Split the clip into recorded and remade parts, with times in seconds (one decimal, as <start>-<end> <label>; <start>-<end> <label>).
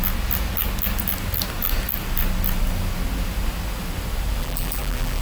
0.0-4.4 recorded; 4.4-5.2 remade